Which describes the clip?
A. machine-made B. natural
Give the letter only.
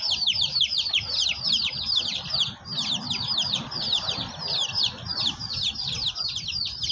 B